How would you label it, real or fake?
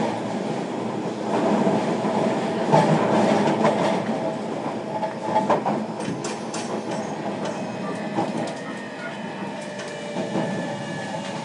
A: real